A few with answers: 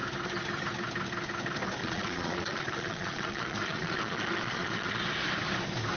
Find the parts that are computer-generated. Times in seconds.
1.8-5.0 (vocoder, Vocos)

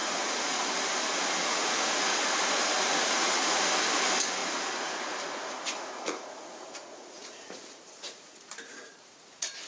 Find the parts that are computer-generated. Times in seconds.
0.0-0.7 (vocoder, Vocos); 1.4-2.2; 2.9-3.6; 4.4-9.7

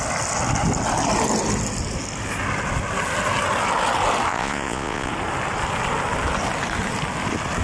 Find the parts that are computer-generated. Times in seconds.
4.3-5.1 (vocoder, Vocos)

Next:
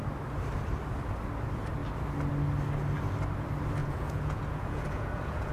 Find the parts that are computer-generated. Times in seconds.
3.8-5.5 (vocoder, Vocos)

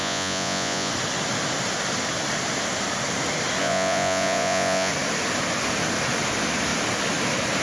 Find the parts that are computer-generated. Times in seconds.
0.0-0.9 (vocoder, Vocos); 3.6-4.9

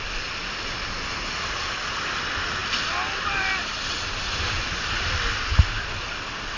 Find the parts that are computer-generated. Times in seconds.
none

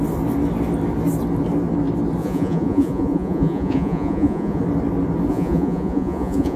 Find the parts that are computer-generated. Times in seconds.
2.2-4.6 (vocoder, Vocos); 5.3-6.6

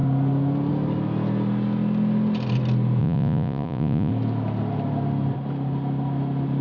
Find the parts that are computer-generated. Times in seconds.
3.0-4.1 (vocoder, Vocos)